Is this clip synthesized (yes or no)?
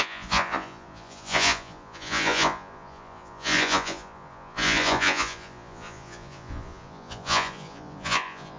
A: yes